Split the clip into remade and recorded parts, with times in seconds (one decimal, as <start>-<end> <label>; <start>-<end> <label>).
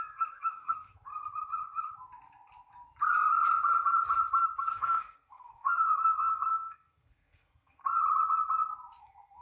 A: 0.0-1.1 remade; 1.1-4.6 recorded; 4.6-7.8 remade; 7.8-9.0 recorded; 9.0-9.4 remade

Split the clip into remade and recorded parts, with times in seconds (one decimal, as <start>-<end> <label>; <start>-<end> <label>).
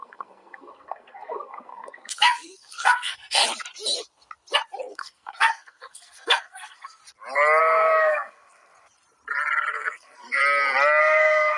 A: 0.0-3.4 remade; 3.4-4.8 recorded; 4.8-7.0 remade; 7.0-7.6 recorded; 7.6-8.7 remade; 8.7-9.7 recorded; 9.7-10.4 remade; 10.4-11.0 recorded; 11.0-11.6 remade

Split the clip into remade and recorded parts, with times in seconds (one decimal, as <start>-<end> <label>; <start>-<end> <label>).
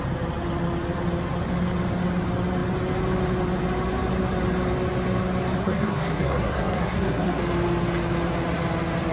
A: 0.0-5.6 recorded; 5.6-7.4 remade; 7.4-9.1 recorded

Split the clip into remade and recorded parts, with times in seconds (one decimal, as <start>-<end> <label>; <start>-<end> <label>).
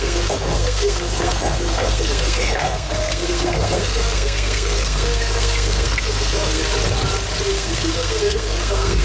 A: 0.0-6.6 remade; 6.6-7.5 recorded; 7.5-9.0 remade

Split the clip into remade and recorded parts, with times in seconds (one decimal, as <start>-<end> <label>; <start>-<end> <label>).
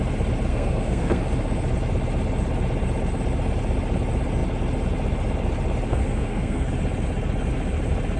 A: 0.0-0.5 recorded; 0.5-1.2 remade; 1.2-5.9 recorded; 5.9-6.7 remade; 6.7-8.2 recorded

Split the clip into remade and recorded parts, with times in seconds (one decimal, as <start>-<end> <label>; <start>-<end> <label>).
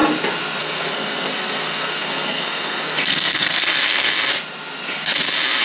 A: 0.0-0.6 recorded; 0.6-4.1 remade; 4.1-5.6 recorded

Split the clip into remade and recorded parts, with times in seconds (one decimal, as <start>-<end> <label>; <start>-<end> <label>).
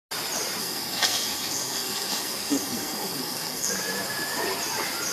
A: 0.0-0.6 recorded; 0.6-3.7 remade; 3.7-5.1 recorded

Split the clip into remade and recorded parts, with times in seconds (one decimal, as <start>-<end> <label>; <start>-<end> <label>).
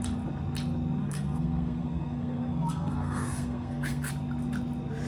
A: 0.0-1.0 recorded; 1.0-4.1 remade; 4.1-5.1 recorded